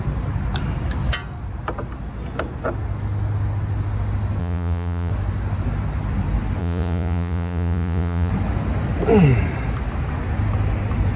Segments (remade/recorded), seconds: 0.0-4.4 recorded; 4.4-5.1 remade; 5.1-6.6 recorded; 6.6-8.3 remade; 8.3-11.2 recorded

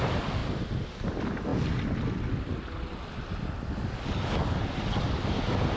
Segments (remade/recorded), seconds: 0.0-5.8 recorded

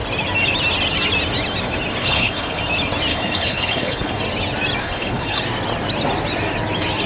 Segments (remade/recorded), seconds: 0.0-2.0 recorded; 2.0-2.6 remade; 2.6-3.1 recorded; 3.1-4.2 remade; 4.2-4.8 recorded; 4.8-5.4 remade; 5.4-7.1 recorded